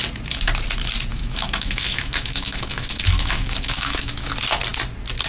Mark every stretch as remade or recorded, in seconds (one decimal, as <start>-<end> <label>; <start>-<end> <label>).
0.0-1.1 recorded; 1.1-4.3 remade; 4.3-5.3 recorded